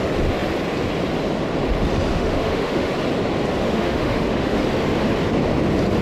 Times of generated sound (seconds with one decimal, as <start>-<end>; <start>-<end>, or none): 2.1-2.9; 3.6-4.6